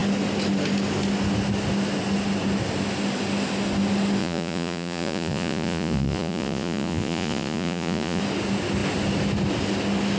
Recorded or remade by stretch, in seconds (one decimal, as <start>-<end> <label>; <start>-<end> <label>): 0.0-4.2 recorded; 4.2-8.2 remade; 8.2-10.2 recorded